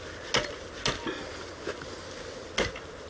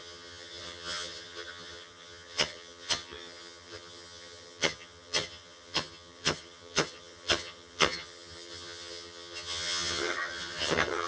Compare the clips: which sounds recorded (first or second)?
first